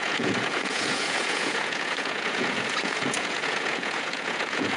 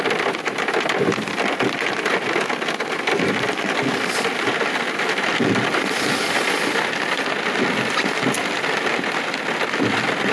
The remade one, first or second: first